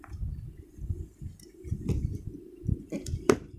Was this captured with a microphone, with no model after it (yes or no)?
no